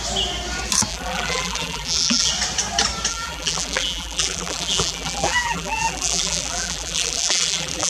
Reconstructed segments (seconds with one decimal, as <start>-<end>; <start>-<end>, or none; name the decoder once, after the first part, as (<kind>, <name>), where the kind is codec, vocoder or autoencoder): 0.9-2.3 (vocoder, BigVGAN v2); 3.1-7.9